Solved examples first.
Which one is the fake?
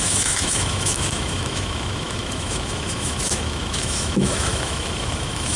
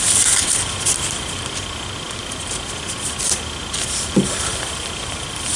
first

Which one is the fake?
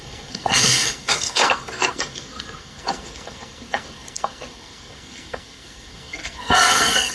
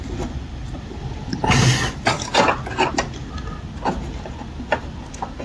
first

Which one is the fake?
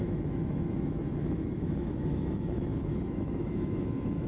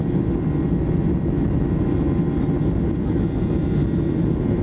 first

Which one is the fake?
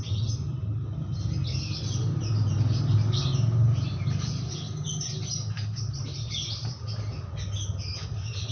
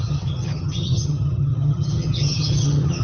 second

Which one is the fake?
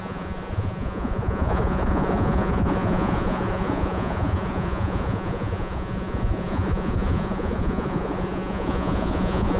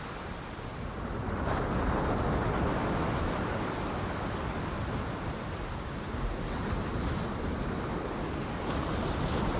first